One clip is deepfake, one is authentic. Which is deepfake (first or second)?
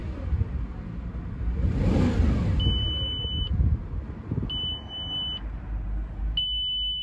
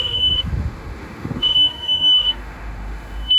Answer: second